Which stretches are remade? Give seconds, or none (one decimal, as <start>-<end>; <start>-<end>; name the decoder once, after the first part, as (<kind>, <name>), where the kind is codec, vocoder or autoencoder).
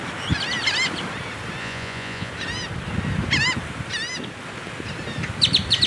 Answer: 1.6-2.3 (vocoder, Vocos)